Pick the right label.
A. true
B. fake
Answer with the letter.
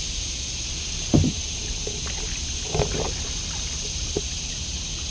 A